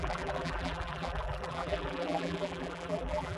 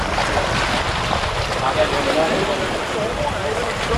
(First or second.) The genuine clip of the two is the second